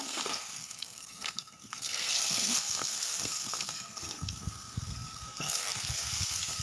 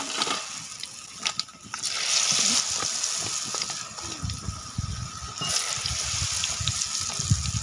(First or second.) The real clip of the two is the second